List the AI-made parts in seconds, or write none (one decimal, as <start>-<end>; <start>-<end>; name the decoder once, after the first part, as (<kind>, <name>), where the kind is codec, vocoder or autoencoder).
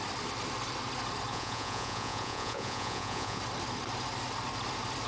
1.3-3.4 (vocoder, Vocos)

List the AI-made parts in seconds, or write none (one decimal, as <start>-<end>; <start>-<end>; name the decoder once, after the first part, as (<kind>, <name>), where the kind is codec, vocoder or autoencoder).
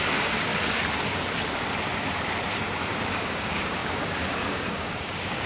0.0-0.5 (codec, DAC); 2.9-5.5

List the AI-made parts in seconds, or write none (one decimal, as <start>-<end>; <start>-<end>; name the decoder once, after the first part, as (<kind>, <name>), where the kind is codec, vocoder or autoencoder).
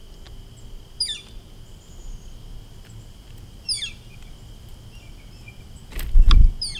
none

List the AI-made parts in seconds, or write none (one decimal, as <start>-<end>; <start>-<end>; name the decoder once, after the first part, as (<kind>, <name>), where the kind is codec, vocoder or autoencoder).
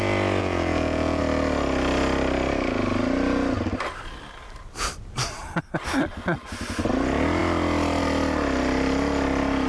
0.4-1.2 (vocoder, Vocos)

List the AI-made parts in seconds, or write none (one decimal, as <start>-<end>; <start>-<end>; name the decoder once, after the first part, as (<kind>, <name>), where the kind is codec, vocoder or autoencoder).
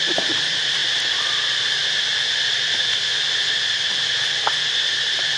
0.0-2.1 (vocoder, BigVGAN v2); 4.5-5.4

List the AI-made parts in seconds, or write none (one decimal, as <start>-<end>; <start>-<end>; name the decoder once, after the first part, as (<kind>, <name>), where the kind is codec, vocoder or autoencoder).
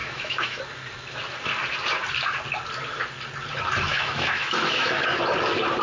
0.0-0.6 (autoencoder, DAC-VAE); 3.9-5.2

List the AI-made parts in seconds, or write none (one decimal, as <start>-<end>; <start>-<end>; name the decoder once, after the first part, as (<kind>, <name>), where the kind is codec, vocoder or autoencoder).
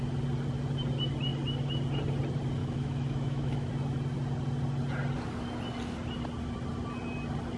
2.6-3.7 (autoencoder, DAC-VAE)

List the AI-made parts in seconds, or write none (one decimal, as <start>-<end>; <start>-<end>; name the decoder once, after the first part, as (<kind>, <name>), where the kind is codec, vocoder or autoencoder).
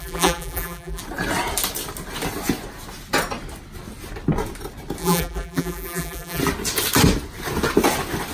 0.0-1.0 (vocoder, BigVGAN v2); 5.0-6.4